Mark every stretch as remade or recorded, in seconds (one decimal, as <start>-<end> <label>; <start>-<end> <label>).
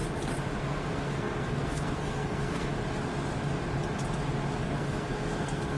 0.0-0.6 recorded; 0.6-2.7 remade; 2.7-4.6 recorded; 4.6-5.8 remade